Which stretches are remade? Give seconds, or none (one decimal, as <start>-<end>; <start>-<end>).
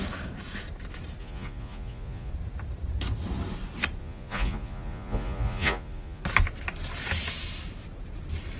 1.2-2.3; 4.0-6.2